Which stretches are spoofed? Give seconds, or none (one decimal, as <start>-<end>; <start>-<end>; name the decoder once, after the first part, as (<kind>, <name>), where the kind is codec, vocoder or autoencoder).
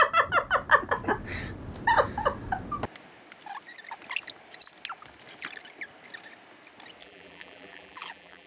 7.0-8.5 (vocoder, BigVGAN v2)